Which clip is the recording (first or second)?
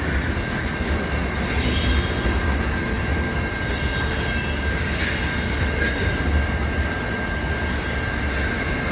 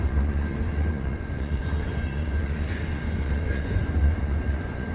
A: first